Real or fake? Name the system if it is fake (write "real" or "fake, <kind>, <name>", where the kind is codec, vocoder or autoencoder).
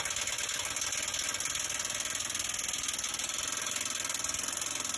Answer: real